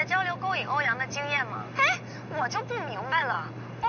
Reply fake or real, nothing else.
real